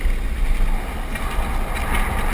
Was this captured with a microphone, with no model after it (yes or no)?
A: yes